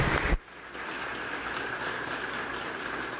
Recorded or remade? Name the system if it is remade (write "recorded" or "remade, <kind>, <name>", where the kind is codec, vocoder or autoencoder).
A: remade, vocoder, BigVGAN v2